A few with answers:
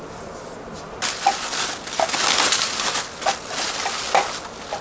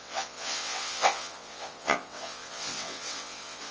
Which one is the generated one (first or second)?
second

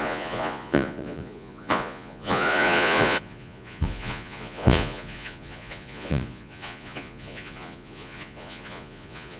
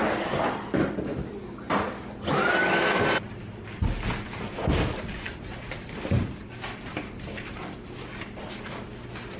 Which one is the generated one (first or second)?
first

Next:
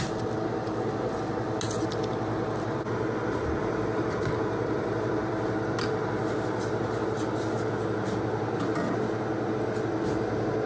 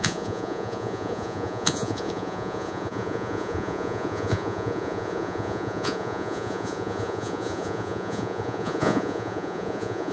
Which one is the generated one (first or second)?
second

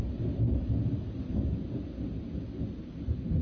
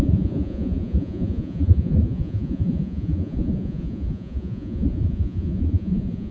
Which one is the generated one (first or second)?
second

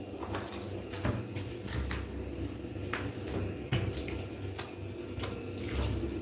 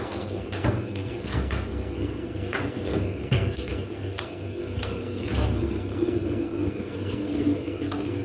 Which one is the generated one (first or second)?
second